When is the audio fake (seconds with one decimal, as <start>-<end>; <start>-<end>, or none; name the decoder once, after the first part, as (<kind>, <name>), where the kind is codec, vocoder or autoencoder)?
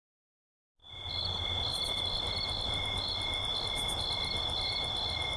0.8-2.2 (vocoder, BigVGAN v2)